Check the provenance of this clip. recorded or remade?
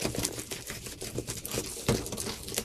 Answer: recorded